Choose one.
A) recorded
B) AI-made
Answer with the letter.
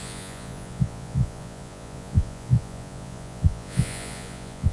B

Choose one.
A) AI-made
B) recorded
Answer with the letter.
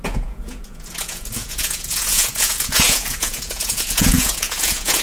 A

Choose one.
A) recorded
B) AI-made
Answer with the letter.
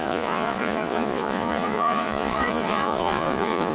B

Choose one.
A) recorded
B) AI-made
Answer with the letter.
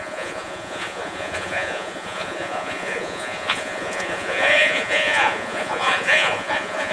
B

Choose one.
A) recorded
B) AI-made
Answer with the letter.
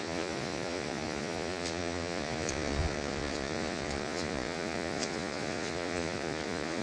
B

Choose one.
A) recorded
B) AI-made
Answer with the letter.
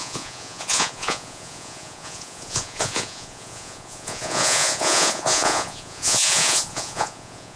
B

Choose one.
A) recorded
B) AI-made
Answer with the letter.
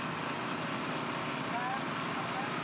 A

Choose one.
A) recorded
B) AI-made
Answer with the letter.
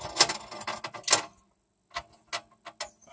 A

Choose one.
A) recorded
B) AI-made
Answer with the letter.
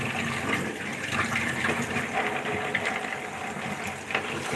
A